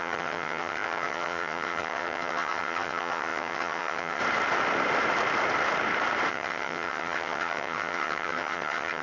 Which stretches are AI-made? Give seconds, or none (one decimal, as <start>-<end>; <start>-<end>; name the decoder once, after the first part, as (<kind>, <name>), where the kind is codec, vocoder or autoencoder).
0.0-4.2 (vocoder, HiFi-GAN); 6.3-9.0